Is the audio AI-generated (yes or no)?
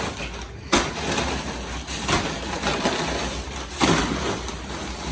no